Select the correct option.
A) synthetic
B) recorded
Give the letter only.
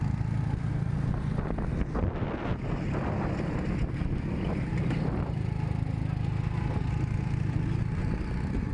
B